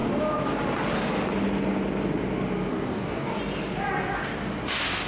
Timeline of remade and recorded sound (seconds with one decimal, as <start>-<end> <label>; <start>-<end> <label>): 0.0-2.7 recorded; 2.7-3.4 remade; 3.4-5.1 recorded